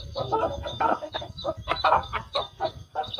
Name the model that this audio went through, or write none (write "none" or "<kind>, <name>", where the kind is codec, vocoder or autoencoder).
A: codec, SNAC